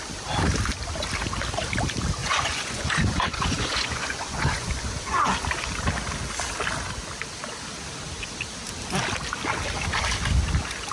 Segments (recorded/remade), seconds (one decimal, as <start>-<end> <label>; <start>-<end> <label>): 0.0-2.2 recorded; 2.2-5.4 remade; 5.4-10.9 recorded